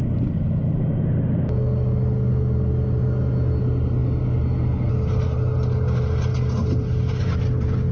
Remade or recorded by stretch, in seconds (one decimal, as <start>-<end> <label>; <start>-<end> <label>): 0.0-7.9 recorded